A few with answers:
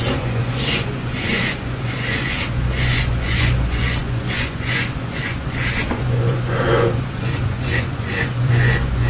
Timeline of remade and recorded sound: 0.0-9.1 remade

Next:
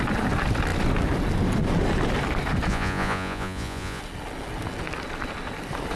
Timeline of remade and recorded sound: 0.0-2.7 recorded; 2.7-4.0 remade; 4.0-6.0 recorded

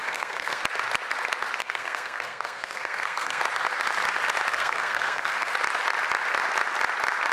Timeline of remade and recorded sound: 0.0-0.6 remade; 0.6-1.6 recorded; 1.6-3.4 remade; 3.4-4.5 recorded; 4.5-5.5 remade; 5.5-7.3 recorded

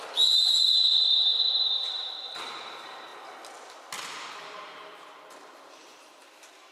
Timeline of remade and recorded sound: 0.0-3.1 remade; 3.1-4.3 recorded; 4.3-6.7 remade

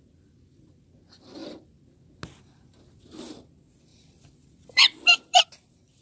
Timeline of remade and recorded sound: 0.0-3.9 recorded; 3.9-5.4 remade; 5.4-6.0 recorded

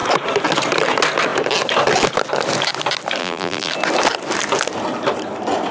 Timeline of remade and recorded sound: 0.0-3.2 recorded; 3.2-3.7 remade; 3.7-5.7 recorded

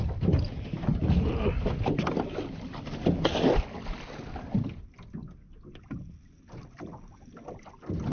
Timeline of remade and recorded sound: 0.0-8.1 recorded

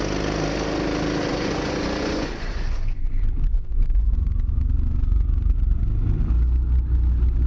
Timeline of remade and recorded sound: 0.0-1.3 recorded; 1.3-5.8 remade; 5.8-7.5 recorded